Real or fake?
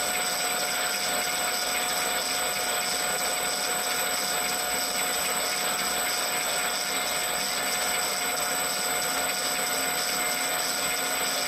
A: real